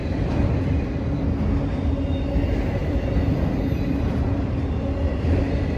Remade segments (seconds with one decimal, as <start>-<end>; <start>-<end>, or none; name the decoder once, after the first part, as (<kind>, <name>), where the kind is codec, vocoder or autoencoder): 2.8-5.8 (vocoder, BigVGAN v2)